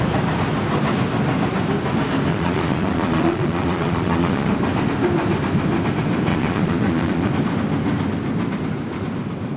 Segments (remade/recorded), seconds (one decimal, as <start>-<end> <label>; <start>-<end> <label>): 0.0-2.3 recorded; 2.3-4.5 remade; 4.5-6.3 recorded; 6.3-7.3 remade; 7.3-9.6 recorded